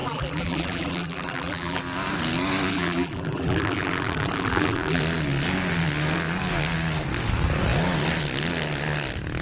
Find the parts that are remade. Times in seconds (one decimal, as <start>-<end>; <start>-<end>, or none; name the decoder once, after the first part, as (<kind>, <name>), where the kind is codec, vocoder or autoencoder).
0.0-1.8 (vocoder, BigVGAN v2); 2.7-5.0

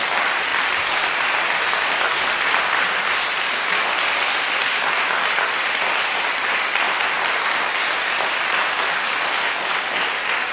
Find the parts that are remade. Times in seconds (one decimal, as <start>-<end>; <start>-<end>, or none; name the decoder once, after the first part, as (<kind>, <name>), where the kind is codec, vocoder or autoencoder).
0.5-1.4 (vocoder, BigVGAN v2)

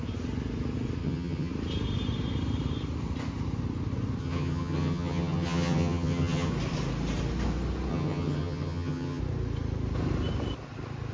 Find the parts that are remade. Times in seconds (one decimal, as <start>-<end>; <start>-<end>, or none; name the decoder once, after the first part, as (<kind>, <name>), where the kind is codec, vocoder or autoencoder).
1.0-1.5 (vocoder, HiFi-GAN); 4.2-6.5; 7.9-9.2

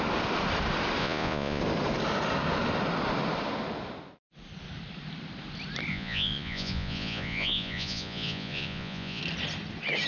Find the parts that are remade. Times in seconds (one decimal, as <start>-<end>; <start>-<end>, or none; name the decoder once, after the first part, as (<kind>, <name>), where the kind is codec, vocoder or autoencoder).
1.0-1.6 (vocoder, Vocos); 5.9-9.2

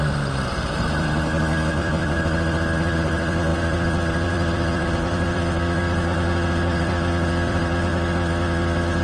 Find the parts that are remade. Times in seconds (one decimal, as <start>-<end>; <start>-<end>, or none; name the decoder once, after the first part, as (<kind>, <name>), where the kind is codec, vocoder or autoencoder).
0.0-7.9 (vocoder, BigVGAN v2)